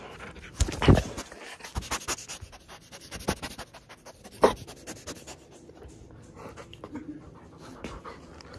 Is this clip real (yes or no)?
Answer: yes